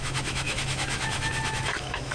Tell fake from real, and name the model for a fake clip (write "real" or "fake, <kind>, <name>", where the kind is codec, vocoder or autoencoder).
fake, autoencoder, DAC-VAE